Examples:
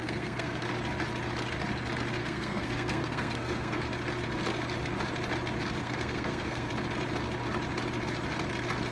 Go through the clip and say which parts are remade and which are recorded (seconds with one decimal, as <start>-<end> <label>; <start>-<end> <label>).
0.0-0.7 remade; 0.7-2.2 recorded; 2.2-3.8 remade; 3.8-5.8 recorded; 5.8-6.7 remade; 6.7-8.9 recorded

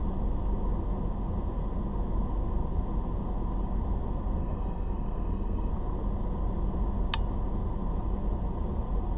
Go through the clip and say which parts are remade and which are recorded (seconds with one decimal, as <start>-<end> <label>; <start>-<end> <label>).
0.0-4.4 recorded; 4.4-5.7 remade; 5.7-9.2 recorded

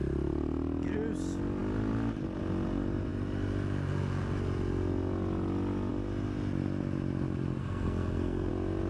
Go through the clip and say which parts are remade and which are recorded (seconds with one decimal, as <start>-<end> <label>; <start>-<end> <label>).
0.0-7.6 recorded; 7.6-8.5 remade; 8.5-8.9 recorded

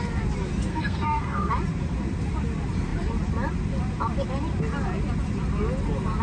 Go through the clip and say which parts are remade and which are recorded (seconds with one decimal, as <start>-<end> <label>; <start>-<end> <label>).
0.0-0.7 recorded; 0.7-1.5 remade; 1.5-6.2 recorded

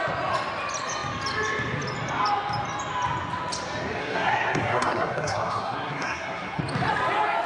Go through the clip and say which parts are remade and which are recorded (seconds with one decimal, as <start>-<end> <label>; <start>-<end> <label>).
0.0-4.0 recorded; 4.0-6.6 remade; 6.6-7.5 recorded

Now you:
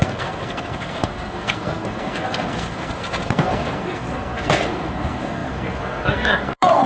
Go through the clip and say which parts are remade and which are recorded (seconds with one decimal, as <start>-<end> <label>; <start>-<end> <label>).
0.0-6.9 remade

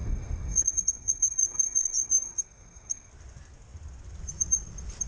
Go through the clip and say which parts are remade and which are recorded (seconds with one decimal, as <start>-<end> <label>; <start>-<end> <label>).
0.0-3.1 remade; 3.1-5.1 recorded